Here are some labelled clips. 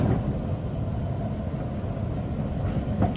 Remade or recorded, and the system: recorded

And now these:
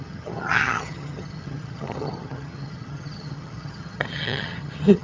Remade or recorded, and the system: remade, vocoder, HiFi-GAN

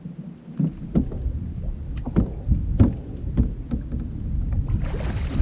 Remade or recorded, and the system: recorded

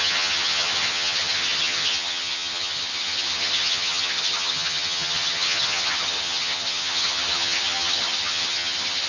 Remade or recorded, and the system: remade, vocoder, HiFi-GAN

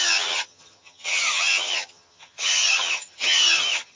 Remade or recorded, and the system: remade, vocoder, HiFi-GAN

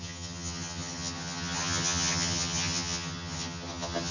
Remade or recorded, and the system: remade, vocoder, HiFi-GAN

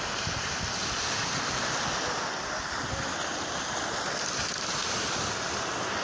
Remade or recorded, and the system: recorded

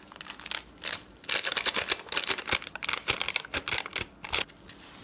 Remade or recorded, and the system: recorded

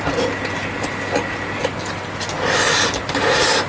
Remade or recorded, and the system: recorded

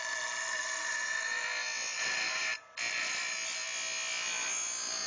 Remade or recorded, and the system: recorded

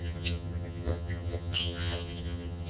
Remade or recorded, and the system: remade, vocoder, HiFi-GAN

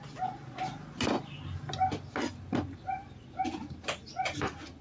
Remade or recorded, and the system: recorded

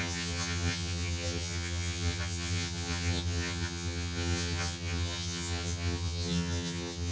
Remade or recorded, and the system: remade, vocoder, HiFi-GAN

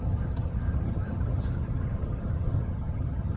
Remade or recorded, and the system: remade, vocoder, HiFi-GAN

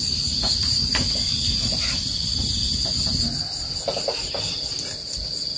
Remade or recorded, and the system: recorded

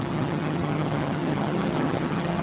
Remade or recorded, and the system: remade, vocoder, HiFi-GAN